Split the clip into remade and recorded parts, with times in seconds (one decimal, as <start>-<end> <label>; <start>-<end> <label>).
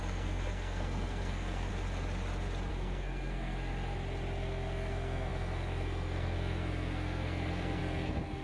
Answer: 0.0-1.7 remade; 1.7-2.7 recorded; 2.7-3.7 remade; 3.7-4.4 recorded; 4.4-8.4 remade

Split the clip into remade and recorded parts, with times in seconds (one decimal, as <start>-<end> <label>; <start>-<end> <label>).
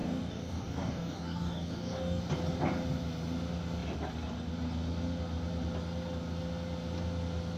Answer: 0.0-2.2 remade; 2.2-7.6 recorded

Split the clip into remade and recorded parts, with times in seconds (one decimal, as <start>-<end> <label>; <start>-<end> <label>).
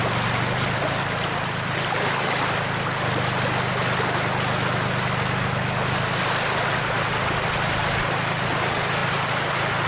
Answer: 0.0-9.0 recorded; 9.0-9.5 remade; 9.5-9.9 recorded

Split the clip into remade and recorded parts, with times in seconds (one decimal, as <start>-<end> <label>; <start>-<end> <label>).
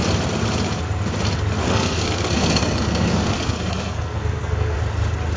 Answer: 0.0-1.6 recorded; 1.6-4.8 remade; 4.8-5.4 recorded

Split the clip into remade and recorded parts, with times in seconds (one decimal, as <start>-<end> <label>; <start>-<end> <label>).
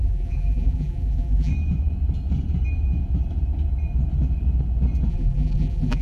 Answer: 0.0-1.5 remade; 1.5-5.1 recorded; 5.1-6.0 remade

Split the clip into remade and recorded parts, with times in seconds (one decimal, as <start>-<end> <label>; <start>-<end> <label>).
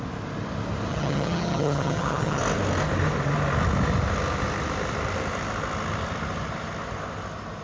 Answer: 0.0-0.9 recorded; 0.9-2.4 remade; 2.4-7.6 recorded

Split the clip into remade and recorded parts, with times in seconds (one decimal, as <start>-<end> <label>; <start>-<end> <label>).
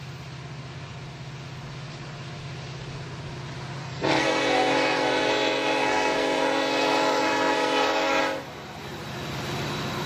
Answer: 0.0-3.8 recorded; 3.8-8.2 remade; 8.2-10.1 recorded